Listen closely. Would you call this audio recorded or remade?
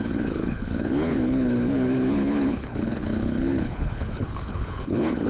remade